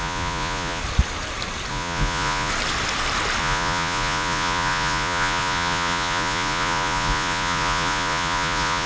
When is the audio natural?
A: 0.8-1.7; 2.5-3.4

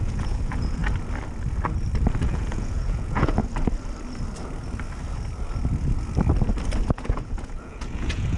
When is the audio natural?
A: 0.8-2.2; 3.4-6.9